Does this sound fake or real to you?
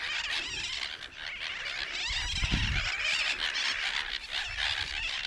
real